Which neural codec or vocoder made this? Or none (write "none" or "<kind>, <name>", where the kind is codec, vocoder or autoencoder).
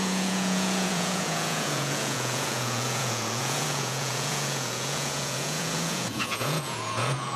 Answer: vocoder, Vocos